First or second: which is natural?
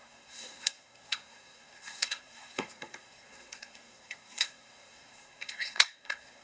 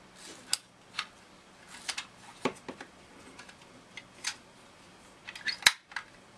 second